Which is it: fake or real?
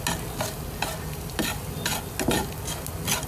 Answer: real